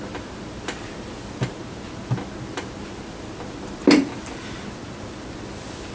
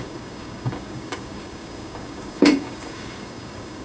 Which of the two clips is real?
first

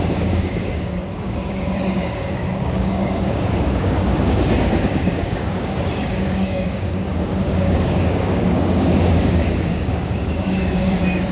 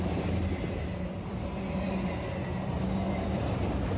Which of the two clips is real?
second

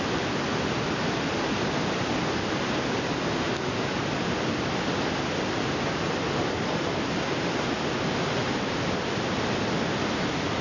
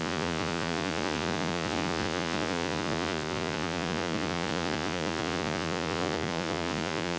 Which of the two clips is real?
first